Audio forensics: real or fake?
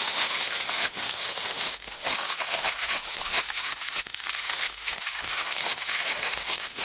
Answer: fake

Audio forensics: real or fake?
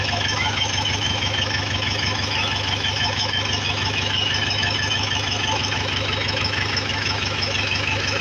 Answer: fake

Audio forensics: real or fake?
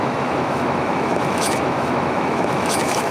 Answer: fake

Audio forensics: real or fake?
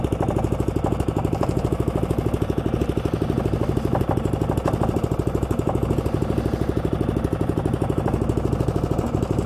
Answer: real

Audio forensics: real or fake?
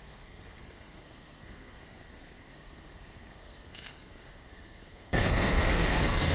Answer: fake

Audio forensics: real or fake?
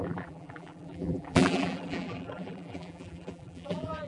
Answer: fake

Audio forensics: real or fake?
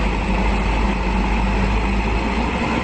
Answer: real